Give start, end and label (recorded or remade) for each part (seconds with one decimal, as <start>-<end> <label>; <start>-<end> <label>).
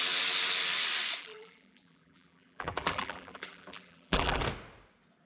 0.0-1.2 recorded; 1.2-4.4 remade; 4.4-5.3 recorded